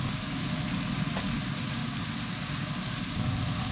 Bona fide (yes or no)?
yes